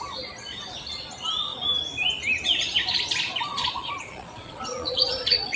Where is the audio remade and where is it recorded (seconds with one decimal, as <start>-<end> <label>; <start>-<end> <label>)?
0.0-3.5 recorded; 3.5-5.6 remade